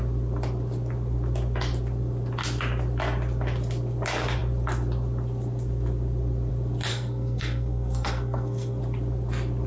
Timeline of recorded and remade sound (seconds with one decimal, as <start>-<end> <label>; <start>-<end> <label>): 0.0-6.9 recorded; 6.9-8.8 remade; 8.8-9.7 recorded